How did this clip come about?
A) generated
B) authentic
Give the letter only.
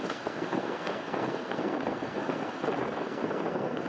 A